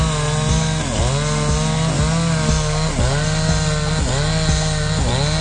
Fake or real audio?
real